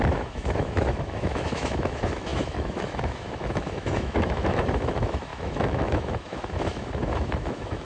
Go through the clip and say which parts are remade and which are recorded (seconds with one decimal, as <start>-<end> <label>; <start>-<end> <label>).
0.0-7.8 remade